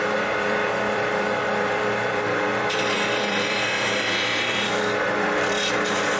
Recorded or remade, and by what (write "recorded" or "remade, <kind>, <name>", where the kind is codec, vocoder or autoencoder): remade, vocoder, BigVGAN v2